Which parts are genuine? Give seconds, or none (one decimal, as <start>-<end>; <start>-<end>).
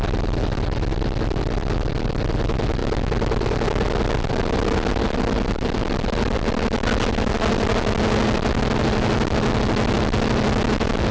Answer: 0.0-11.1